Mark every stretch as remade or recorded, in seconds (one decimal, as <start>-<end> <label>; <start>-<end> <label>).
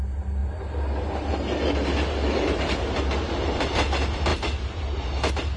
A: 0.0-5.6 recorded